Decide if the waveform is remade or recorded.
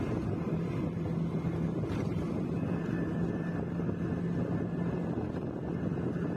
recorded